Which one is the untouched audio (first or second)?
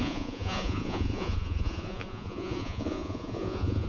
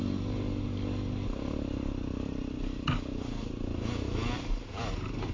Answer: second